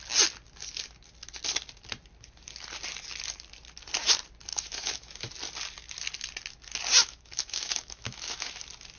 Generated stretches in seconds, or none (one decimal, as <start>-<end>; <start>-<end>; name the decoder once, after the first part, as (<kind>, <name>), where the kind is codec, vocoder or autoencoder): 4.5-5.3 (autoencoder, DAC-VAE); 7.0-8.6